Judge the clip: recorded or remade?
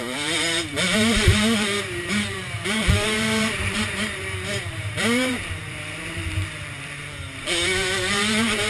remade